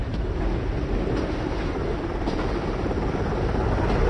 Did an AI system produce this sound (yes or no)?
no